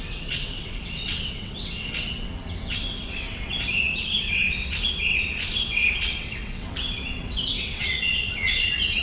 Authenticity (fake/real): fake